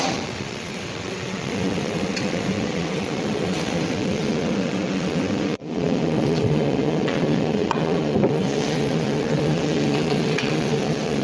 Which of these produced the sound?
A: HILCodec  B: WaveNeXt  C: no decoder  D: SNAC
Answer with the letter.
B